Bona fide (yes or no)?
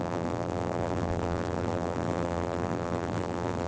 no